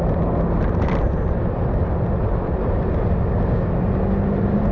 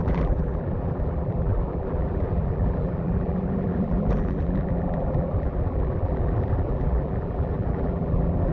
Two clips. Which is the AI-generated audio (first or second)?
second